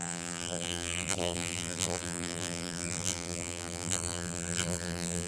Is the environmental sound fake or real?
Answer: fake